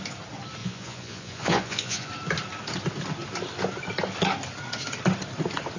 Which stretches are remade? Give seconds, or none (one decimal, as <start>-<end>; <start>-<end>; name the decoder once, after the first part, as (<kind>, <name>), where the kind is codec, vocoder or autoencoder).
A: 0.6-2.1 (vocoder, Vocos)